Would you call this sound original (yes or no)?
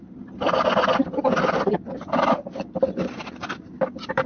yes